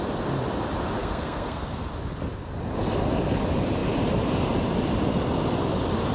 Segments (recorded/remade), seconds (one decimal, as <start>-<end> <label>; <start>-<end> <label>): 0.0-1.0 recorded; 1.0-1.9 remade; 1.9-6.1 recorded

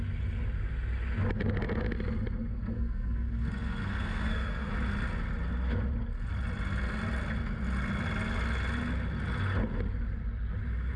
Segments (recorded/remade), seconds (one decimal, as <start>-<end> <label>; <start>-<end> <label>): 0.0-2.5 recorded; 2.5-4.7 remade; 4.7-11.0 recorded

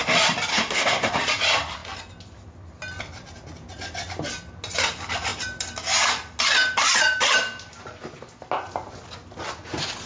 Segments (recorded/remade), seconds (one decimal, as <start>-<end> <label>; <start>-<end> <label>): 0.0-0.5 recorded; 0.5-1.2 remade; 1.2-10.1 recorded

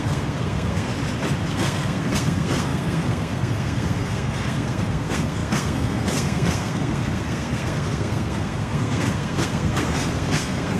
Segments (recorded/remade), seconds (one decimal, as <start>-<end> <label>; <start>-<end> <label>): 0.0-0.9 remade; 0.9-1.5 recorded; 1.5-10.8 remade

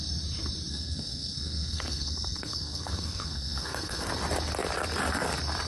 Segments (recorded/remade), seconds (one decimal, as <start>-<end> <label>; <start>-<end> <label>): 0.0-0.7 recorded; 0.7-4.1 remade; 4.1-5.7 recorded

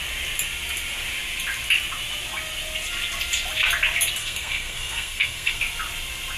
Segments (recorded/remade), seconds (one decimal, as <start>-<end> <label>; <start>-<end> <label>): 0.0-4.2 recorded; 4.2-5.6 remade; 5.6-6.4 recorded

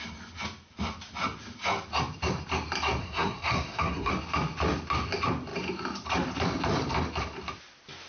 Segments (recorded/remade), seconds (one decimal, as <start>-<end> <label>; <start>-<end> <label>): 0.0-3.0 recorded; 3.0-4.1 remade; 4.1-8.1 recorded